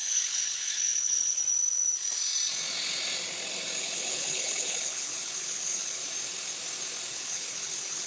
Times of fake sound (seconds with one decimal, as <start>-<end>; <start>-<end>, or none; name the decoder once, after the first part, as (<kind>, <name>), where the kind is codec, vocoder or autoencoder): 0.0-1.4 (codec, HILCodec); 3.8-6.0; 7.1-8.1